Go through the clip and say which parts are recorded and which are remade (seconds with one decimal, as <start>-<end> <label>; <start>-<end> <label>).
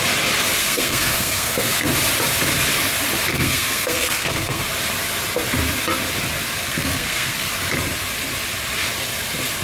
0.0-0.6 recorded; 0.6-1.9 remade; 1.9-3.3 recorded; 3.3-4.6 remade; 4.6-6.6 recorded; 6.6-7.5 remade; 7.5-9.6 recorded